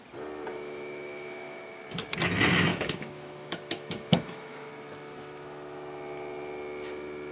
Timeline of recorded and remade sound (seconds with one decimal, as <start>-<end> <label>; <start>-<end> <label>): 0.0-0.5 recorded; 0.5-1.8 remade; 1.8-2.7 recorded; 2.7-4.7 remade; 4.7-7.3 recorded